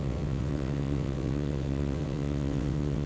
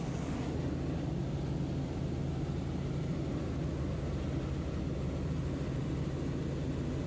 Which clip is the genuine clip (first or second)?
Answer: second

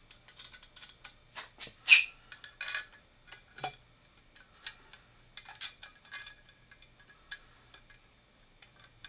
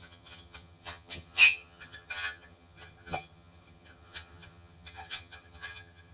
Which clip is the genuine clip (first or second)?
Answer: first